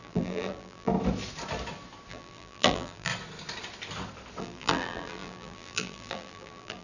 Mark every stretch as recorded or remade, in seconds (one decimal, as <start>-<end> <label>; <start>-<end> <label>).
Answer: 0.0-0.9 remade; 0.9-2.1 recorded; 2.1-3.1 remade; 3.1-4.4 recorded; 4.4-6.8 remade